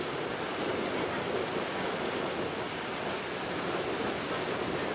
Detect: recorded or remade recorded